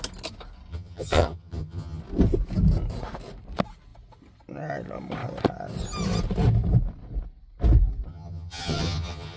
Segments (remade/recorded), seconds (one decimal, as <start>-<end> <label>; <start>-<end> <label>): 0.0-0.7 recorded; 0.7-2.0 remade; 2.0-8.1 recorded; 8.1-9.4 remade